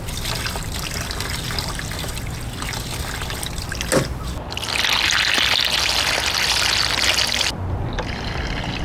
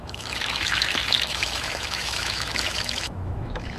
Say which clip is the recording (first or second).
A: first